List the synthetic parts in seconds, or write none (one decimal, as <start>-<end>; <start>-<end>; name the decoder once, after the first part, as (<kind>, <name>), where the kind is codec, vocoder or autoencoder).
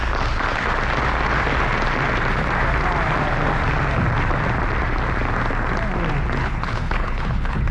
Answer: 6.4-7.7 (codec, HILCodec)